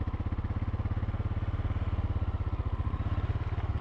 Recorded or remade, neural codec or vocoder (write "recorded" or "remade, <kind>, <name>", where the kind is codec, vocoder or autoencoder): recorded